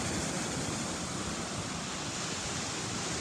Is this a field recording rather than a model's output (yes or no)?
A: yes